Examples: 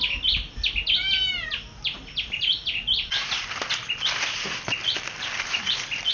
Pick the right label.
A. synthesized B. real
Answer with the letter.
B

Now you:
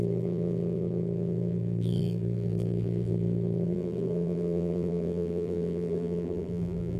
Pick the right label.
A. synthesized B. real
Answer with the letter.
A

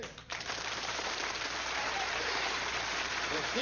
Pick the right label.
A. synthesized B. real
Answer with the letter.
A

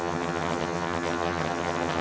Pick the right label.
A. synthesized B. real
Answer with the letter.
A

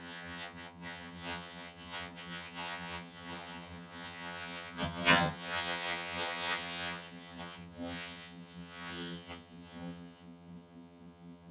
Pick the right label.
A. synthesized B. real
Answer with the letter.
A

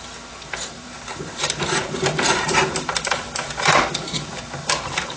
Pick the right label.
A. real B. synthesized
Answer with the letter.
B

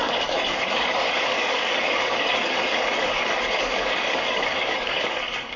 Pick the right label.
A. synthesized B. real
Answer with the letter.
A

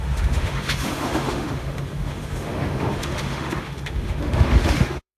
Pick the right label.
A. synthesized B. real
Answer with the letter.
A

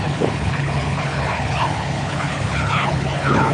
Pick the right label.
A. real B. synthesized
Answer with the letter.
B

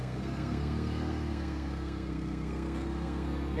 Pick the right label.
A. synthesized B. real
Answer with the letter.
A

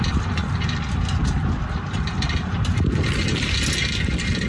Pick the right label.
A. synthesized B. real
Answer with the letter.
B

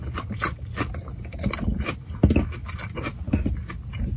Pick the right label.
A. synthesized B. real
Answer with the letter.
B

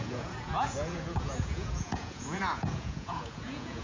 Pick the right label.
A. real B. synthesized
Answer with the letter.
B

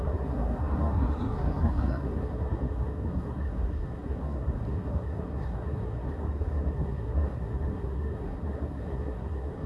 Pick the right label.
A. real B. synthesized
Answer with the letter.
B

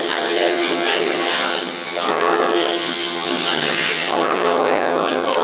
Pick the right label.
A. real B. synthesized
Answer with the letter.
B